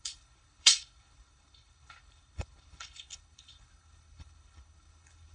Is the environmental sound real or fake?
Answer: fake